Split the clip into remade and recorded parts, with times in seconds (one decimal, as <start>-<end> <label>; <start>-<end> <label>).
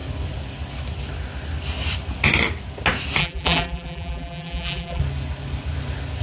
0.0-3.2 recorded; 3.2-5.0 remade; 5.0-6.2 recorded